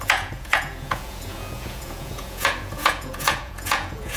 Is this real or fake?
fake